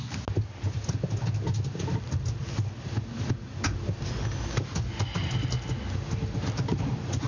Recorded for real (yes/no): yes